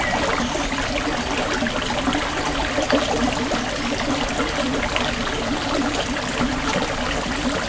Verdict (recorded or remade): recorded